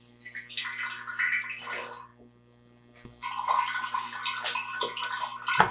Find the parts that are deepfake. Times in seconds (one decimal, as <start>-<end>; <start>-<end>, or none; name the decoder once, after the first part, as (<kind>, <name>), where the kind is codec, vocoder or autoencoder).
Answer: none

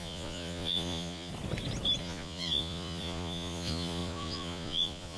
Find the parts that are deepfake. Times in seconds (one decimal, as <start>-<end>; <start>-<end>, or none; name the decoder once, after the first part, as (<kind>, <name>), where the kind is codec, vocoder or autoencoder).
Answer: 0.0-1.3 (vocoder, Vocos); 2.0-5.2

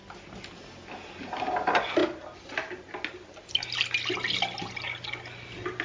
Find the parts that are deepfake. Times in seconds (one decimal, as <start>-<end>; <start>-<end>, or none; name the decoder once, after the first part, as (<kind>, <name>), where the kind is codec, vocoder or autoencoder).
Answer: none